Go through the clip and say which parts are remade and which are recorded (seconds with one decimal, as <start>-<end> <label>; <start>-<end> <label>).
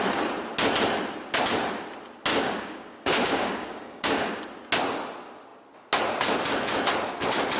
0.0-2.3 recorded; 2.3-4.4 remade; 4.4-7.6 recorded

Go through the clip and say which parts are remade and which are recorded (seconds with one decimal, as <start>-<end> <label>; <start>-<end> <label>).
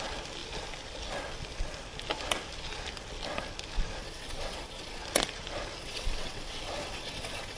0.0-4.0 recorded; 4.0-5.0 remade; 5.0-5.8 recorded; 5.8-7.6 remade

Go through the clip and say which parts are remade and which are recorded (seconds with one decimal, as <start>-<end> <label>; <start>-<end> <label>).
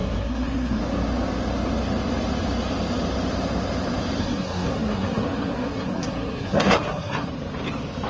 0.0-0.8 remade; 0.8-4.2 recorded; 4.2-7.3 remade; 7.3-8.1 recorded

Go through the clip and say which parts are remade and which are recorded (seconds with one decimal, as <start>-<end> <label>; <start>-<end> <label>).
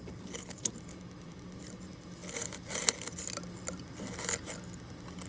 0.0-5.3 recorded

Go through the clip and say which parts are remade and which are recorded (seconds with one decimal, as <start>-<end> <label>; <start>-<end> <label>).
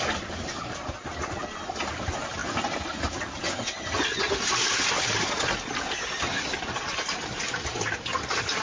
0.0-8.6 recorded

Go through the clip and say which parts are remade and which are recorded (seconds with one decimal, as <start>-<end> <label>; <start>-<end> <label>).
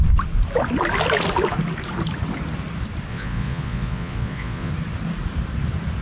0.0-3.1 recorded; 3.1-4.7 remade; 4.7-6.0 recorded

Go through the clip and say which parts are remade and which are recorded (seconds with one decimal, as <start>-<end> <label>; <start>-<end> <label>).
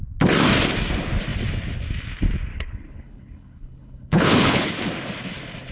0.0-2.5 recorded; 2.5-4.7 remade; 4.7-5.7 recorded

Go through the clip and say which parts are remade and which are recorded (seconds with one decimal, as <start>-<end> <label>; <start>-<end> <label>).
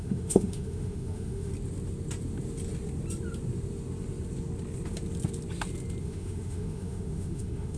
0.0-1.5 remade; 1.5-6.0 recorded; 6.0-7.8 remade